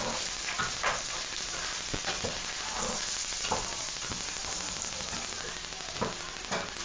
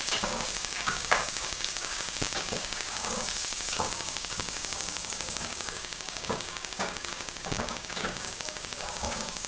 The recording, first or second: first